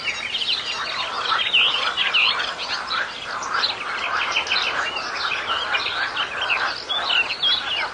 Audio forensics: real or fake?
real